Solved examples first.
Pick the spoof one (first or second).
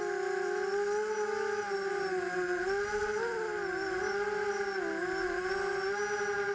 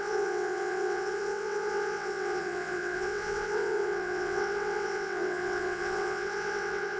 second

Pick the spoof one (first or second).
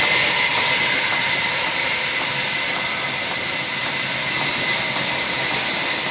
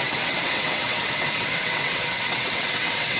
second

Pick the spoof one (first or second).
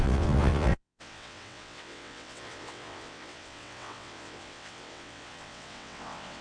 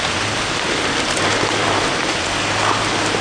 first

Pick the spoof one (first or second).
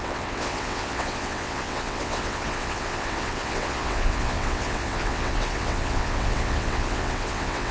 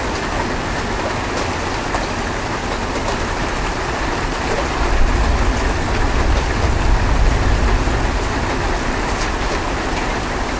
first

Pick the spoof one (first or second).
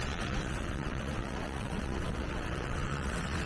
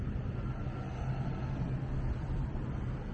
first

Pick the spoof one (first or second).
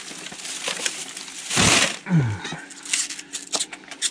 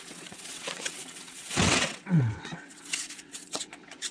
second